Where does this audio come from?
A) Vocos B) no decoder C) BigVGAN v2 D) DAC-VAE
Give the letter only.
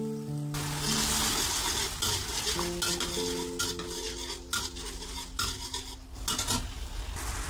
B